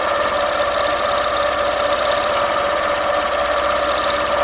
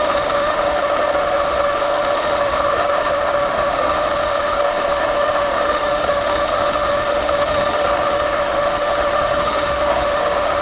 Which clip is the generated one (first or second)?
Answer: second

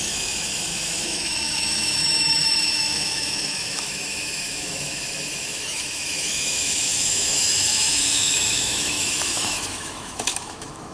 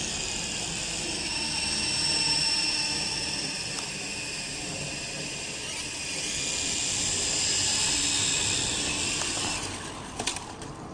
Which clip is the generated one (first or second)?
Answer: first